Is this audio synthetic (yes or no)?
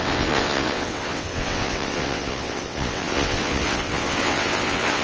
yes